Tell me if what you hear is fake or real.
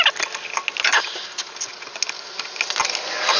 real